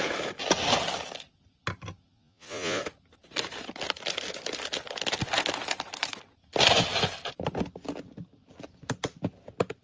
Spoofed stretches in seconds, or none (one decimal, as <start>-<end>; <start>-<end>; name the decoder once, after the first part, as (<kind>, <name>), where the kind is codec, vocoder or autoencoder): 2.1-2.8 (vocoder, Vocos)